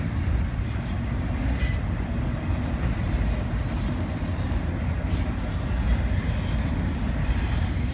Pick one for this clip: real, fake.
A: real